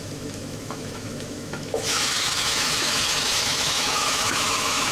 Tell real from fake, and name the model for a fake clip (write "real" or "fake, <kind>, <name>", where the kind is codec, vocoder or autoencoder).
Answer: fake, autoencoder, DAC-VAE